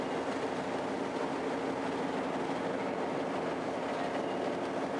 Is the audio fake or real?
real